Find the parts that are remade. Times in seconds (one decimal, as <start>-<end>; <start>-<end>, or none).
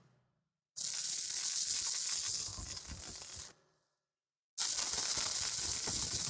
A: none